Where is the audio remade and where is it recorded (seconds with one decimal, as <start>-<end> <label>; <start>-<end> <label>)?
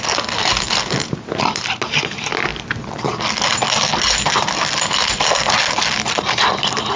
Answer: 0.0-7.0 recorded